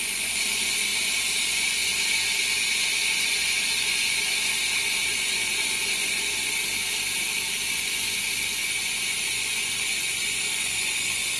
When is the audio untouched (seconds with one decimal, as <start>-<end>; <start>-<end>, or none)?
0.9-1.5; 1.9-2.7; 6.6-7.7